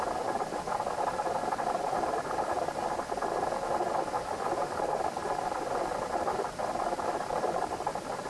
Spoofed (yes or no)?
no